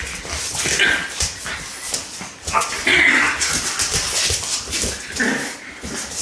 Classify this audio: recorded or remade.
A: recorded